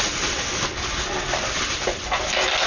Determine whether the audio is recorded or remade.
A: recorded